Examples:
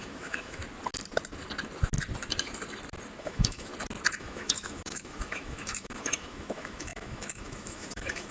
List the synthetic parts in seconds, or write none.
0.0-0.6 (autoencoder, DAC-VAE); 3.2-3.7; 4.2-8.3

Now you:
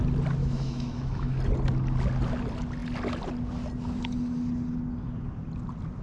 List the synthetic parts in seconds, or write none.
0.4-1.4 (autoencoder, DAC-VAE)

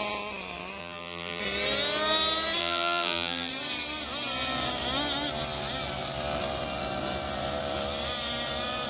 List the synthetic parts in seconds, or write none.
0.8-1.4 (vocoder, BigVGAN v2); 2.6-3.5

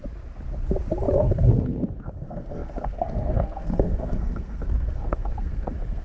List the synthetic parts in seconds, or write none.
1.2-6.0 (codec, SNAC)

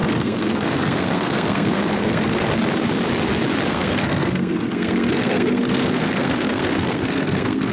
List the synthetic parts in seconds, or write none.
0.0-2.5 (codec, SNAC); 3.7-7.7

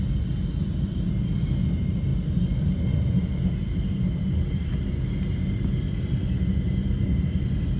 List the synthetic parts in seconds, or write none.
none

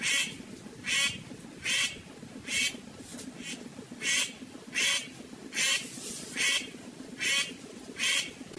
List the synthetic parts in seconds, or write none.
none